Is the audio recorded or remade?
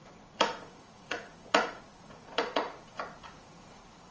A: remade